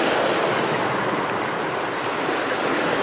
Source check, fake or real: real